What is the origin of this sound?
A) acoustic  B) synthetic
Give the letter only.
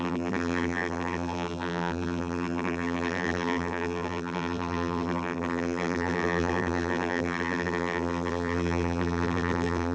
B